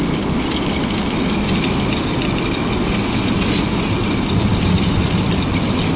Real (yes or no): yes